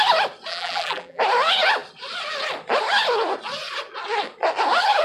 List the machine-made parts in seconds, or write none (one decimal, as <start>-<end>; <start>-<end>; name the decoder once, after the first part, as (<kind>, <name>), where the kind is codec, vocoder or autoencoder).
0.5-1.2 (vocoder, BigVGAN v2)

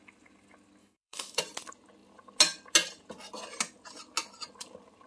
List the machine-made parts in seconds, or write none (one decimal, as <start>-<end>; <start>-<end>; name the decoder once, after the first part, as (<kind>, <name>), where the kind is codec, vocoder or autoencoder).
0.8-1.4 (autoencoder, DAC-VAE)

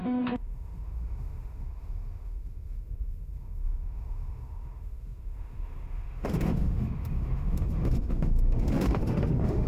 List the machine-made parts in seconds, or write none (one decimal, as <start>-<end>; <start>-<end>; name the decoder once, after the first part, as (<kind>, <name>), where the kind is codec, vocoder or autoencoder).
0.0-9.7 (autoencoder, DAC-VAE)

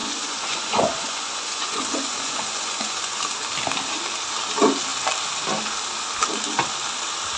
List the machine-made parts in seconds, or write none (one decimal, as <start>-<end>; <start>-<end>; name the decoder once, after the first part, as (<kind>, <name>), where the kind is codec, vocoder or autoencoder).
0.0-3.2 (vocoder, Vocos)

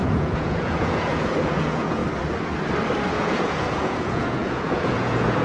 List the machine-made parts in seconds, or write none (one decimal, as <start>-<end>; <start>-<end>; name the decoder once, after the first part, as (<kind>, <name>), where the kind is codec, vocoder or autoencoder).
0.0-2.0 (vocoder, Vocos); 3.1-5.4

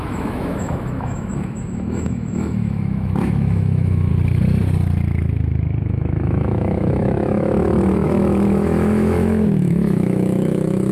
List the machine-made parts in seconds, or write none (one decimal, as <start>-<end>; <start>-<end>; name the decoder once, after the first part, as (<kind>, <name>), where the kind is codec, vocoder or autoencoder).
0.0-4.1 (autoencoder, DAC-VAE); 5.8-10.9

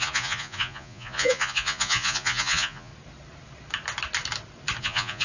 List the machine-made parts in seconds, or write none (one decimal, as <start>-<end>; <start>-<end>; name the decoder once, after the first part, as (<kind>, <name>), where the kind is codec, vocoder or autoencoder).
0.0-2.9 (vocoder, Vocos); 4.8-5.2

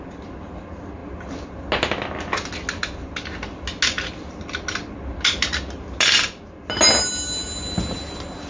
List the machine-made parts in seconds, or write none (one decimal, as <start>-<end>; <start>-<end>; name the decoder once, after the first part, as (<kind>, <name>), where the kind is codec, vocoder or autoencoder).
none